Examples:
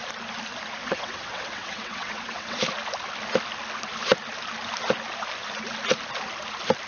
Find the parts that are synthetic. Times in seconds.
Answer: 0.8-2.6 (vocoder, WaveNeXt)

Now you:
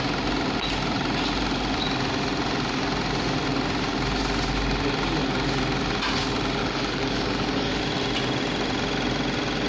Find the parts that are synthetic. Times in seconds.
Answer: 6.6-7.8 (codec, DAC)

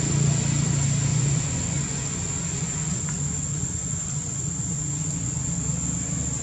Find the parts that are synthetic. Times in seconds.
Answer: 1.1-3.0 (vocoder, Vocos); 3.5-5.5

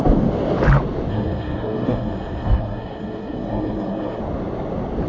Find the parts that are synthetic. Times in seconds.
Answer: 1.1-4.2 (codec, SNAC)

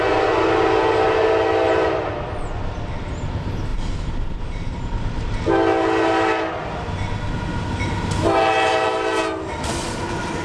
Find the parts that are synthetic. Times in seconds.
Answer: none

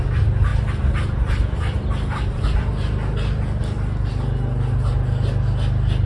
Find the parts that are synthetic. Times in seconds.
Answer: none